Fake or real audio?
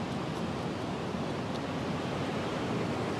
real